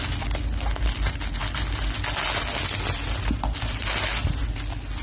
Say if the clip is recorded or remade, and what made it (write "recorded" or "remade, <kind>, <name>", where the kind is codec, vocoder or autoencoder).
recorded